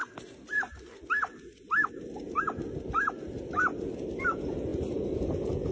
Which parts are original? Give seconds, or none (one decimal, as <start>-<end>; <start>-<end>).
0.0-5.7